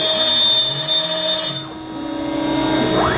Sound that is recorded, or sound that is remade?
recorded